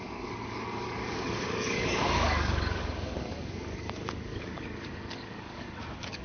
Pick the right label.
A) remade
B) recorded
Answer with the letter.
A